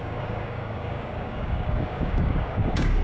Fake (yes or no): yes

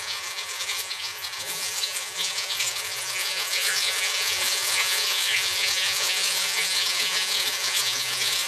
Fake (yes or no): yes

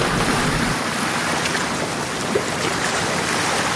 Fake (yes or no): yes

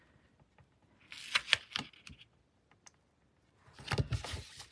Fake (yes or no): no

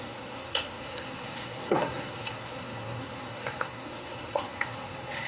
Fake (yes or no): yes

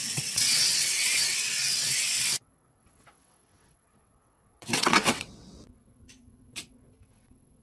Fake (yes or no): yes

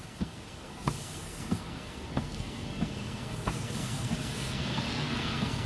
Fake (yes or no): yes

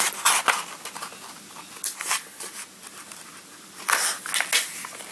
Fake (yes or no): no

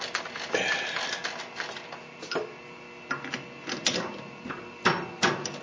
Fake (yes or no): no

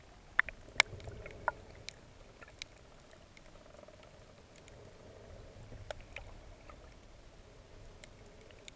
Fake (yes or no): no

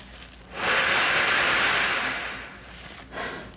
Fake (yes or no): no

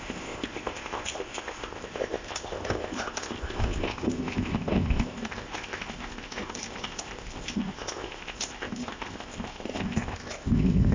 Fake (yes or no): yes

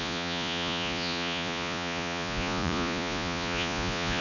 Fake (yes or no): yes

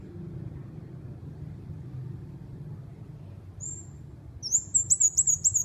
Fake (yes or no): no